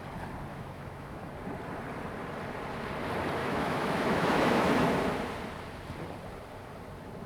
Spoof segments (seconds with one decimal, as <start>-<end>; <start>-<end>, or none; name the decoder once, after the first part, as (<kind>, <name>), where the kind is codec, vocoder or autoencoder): 0.5-1.3 (autoencoder, DAC-VAE); 3.4-4.7